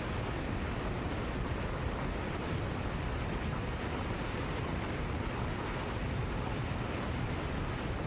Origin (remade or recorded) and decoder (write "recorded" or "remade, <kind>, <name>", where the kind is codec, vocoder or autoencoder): recorded